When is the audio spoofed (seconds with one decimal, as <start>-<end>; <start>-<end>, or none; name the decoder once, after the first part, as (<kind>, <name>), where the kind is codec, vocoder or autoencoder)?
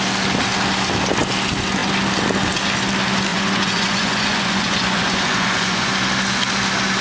3.3-5.9 (vocoder, Vocos)